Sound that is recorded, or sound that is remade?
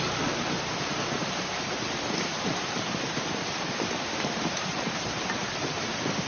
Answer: remade